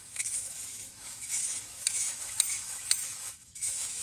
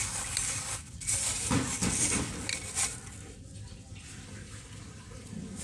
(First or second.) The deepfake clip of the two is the first